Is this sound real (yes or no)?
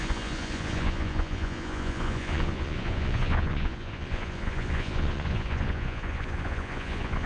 no